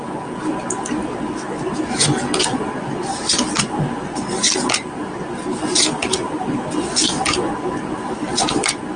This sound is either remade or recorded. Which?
recorded